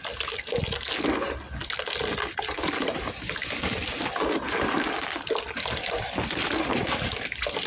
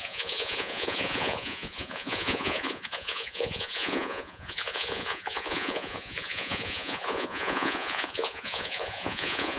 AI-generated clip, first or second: second